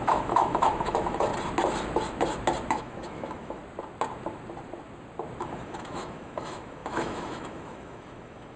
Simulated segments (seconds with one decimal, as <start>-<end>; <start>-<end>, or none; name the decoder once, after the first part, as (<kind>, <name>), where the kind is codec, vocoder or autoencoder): 0.0-1.3 (autoencoder, DAC-VAE); 2.7-3.6; 5.4-8.6